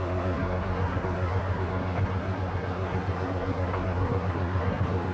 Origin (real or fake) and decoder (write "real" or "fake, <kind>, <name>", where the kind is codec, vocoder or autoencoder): fake, codec, SNAC